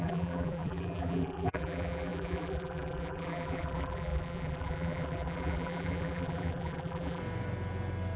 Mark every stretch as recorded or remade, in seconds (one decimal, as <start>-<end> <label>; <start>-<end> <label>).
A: 0.0-7.2 remade; 7.2-8.2 recorded